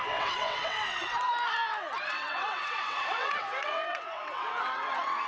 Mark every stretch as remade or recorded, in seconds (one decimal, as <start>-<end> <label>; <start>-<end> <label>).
0.0-1.1 remade; 1.1-2.0 recorded; 2.0-5.3 remade